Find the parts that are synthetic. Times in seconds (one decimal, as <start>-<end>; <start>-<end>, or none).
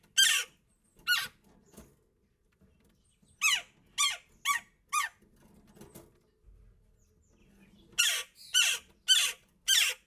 none